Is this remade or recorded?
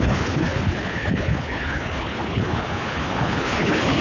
remade